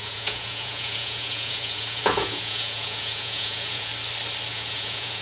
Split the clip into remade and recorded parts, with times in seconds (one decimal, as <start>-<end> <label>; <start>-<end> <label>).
0.0-3.9 remade; 3.9-4.5 recorded; 4.5-5.2 remade